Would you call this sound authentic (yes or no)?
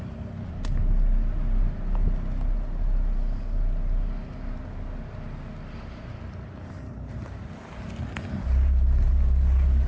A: yes